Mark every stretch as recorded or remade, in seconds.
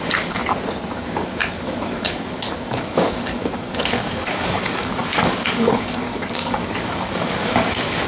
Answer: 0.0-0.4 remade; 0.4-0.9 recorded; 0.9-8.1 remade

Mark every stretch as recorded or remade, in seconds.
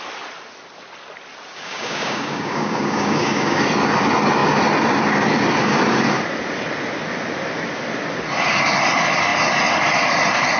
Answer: 0.0-1.5 recorded; 1.5-3.6 remade; 3.6-10.6 recorded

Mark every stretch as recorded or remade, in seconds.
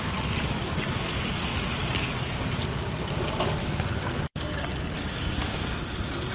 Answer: 0.0-4.3 recorded; 4.3-5.8 remade; 5.8-6.3 recorded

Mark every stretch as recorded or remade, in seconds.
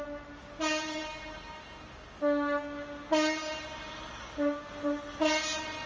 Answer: 0.0-5.9 recorded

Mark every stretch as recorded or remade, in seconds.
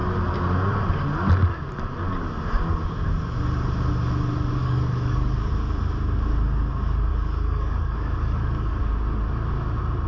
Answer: 0.0-4.6 recorded; 4.6-5.5 remade; 5.5-7.1 recorded; 7.1-8.8 remade; 8.8-10.1 recorded